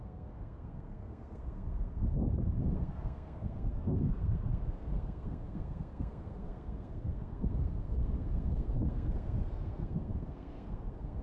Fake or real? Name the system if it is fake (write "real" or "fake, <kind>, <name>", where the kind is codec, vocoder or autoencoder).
fake, codec, SNAC